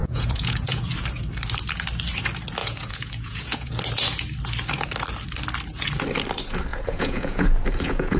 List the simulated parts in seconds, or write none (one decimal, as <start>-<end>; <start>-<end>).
0.0-0.8; 2.6-3.7; 6.7-8.2